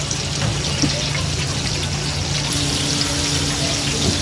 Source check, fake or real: real